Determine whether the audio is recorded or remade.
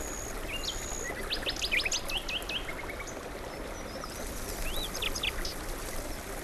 recorded